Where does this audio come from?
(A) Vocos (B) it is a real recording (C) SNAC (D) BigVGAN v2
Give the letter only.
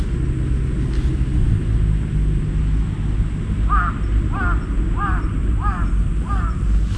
B